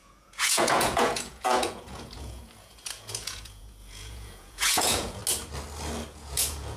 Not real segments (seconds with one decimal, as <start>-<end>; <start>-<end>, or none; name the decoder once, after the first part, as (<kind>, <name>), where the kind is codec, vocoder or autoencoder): 0.0-5.2 (vocoder, Vocos); 6.1-6.8

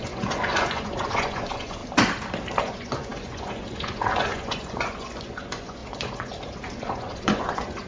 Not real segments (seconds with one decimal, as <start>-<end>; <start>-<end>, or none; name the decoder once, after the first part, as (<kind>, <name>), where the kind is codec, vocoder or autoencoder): 0.0-1.8 (vocoder, Vocos); 2.6-7.9

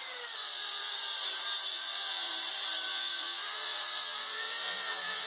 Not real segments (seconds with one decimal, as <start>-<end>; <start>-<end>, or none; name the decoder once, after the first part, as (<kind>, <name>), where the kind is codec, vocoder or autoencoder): 0.4-0.9 (vocoder, Vocos); 1.7-2.3; 2.9-5.3

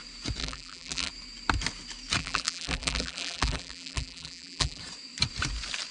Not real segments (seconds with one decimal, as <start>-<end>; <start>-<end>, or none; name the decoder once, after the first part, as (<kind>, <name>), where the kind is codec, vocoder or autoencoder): 0.4-1.1 (vocoder, BigVGAN v2); 2.2-4.8